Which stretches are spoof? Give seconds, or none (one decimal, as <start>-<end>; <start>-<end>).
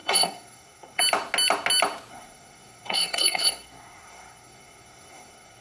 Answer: 0.0-1.0; 2.1-5.6